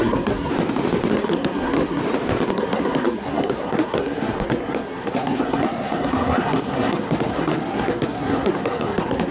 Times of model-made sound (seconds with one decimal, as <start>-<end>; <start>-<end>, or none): 0.0-0.5; 1.1-2.0; 2.5-9.3